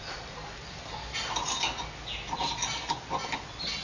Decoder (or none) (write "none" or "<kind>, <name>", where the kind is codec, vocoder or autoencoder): none